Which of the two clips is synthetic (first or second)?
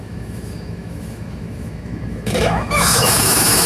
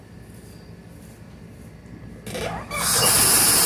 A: first